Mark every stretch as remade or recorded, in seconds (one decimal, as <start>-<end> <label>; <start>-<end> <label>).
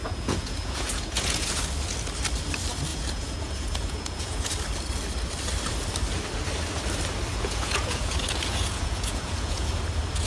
0.0-1.6 remade; 1.6-2.9 recorded; 2.9-4.5 remade; 4.5-7.3 recorded; 7.3-9.7 remade; 9.7-10.3 recorded